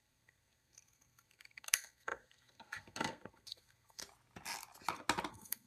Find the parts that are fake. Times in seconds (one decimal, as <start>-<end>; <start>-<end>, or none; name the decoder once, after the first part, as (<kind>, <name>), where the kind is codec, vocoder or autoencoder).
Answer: 0.0-4.0 (codec, SNAC); 5.3-5.7